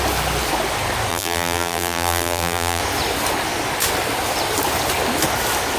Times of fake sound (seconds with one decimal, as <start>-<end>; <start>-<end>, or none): 1.1-2.8